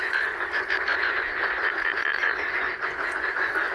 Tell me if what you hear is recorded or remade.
remade